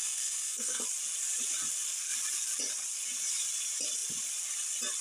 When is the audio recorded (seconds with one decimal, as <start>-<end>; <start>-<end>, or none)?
0.8-5.0